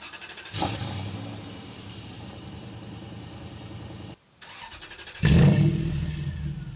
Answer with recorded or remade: remade